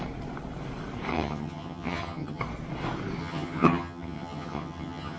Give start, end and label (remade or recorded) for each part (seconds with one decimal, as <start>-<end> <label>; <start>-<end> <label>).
0.0-1.1 recorded; 1.1-2.4 remade; 2.4-3.2 recorded; 3.2-5.2 remade